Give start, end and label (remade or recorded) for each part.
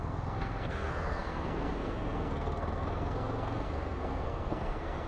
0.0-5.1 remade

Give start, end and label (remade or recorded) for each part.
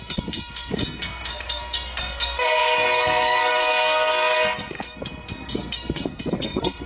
0.0-6.9 remade